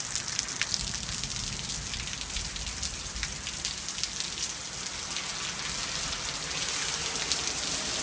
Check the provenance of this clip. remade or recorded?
recorded